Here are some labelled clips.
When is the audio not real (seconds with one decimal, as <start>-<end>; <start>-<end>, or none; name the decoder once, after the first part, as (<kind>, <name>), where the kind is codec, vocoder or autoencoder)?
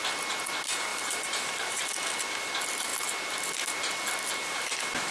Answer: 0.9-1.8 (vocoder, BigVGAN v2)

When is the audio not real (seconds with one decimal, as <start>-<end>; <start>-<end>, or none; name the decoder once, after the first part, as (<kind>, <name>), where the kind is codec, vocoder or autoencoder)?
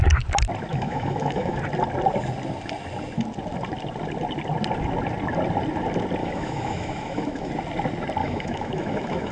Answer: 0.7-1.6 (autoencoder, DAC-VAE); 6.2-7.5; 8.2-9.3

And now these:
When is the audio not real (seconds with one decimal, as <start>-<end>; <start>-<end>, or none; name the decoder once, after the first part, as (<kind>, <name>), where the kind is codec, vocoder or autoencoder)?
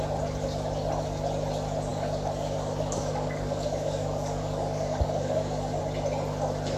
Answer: 1.9-5.8 (codec, DAC)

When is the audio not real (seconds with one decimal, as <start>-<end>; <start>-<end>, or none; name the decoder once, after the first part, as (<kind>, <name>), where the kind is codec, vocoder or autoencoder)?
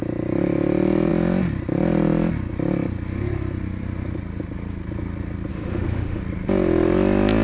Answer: 5.5-6.2 (autoencoder, DAC-VAE)